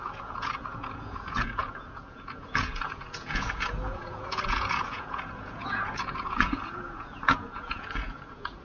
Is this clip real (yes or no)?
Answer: no